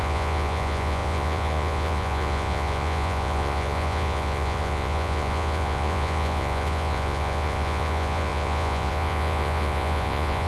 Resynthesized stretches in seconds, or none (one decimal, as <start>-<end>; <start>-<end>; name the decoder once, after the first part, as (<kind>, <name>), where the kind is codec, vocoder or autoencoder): 0.0-10.5 (vocoder, Vocos)